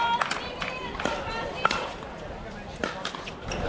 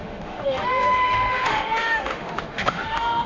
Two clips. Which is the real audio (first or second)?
first